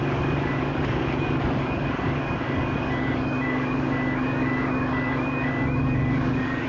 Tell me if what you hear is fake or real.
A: fake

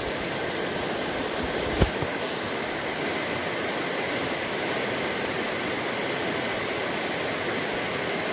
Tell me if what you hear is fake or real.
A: real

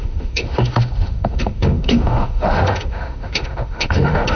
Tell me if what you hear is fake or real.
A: fake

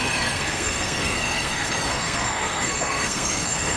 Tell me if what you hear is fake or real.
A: fake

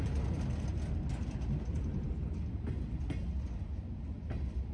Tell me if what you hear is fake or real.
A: real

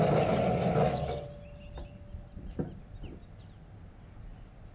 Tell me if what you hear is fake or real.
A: real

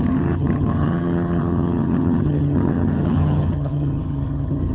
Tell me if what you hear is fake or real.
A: fake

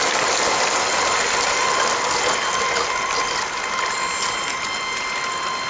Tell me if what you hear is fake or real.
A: real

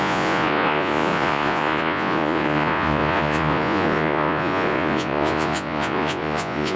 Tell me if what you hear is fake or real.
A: fake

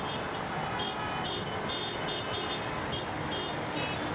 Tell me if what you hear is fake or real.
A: real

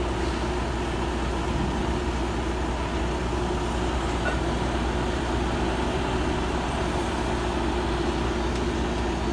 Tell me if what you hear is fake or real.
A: real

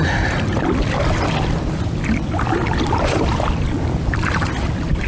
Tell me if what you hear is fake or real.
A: real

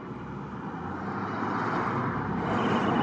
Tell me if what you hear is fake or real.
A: real